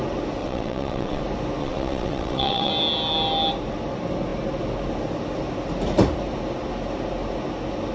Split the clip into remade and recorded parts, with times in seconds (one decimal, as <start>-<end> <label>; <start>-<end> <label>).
0.0-0.4 recorded; 0.4-1.2 remade; 1.2-1.6 recorded; 1.6-2.7 remade; 2.7-7.9 recorded